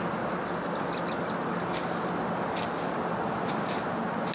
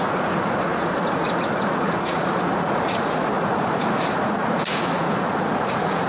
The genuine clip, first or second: first